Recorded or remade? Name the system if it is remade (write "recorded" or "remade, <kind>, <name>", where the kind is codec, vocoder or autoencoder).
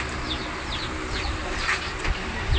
recorded